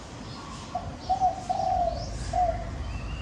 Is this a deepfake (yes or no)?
no